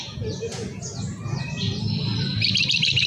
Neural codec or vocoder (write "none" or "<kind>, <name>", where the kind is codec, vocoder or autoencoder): none